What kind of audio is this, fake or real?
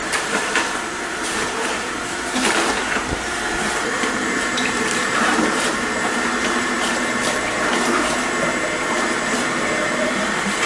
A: fake